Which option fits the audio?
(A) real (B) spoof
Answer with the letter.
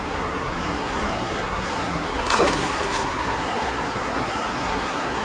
B